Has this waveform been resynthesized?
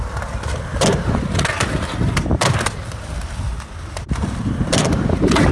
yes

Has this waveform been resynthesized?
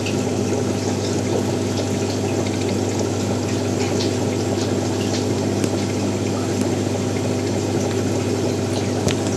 no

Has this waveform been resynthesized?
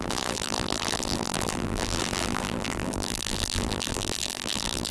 yes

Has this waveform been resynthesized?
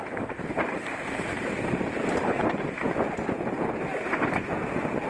yes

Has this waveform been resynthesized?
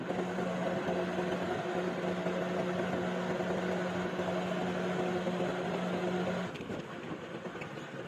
no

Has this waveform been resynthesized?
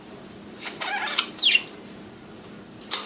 yes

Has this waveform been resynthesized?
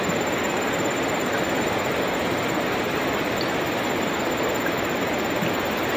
no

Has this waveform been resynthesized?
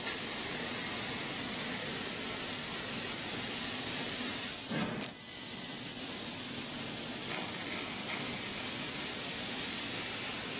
no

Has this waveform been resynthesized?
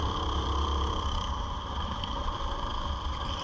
yes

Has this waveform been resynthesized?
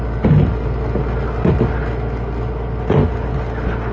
no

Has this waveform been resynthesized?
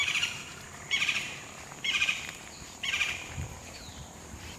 yes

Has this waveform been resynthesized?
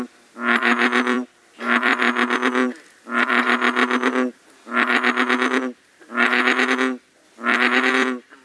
yes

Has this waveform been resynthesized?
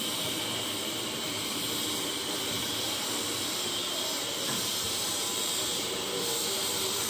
yes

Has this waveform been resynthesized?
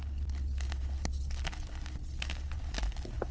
no